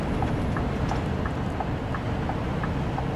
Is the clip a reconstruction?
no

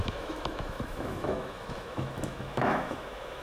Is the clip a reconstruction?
yes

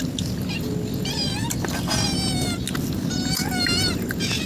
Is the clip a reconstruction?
no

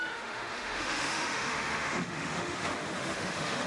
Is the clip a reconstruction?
yes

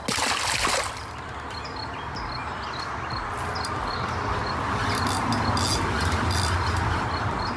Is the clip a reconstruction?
no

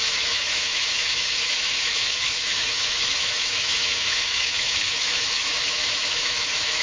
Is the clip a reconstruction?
yes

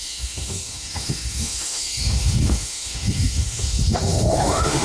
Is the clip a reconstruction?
yes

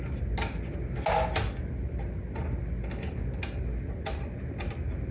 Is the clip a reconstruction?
no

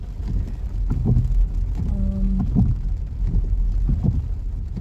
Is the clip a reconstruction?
no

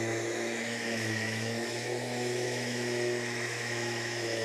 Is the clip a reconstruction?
yes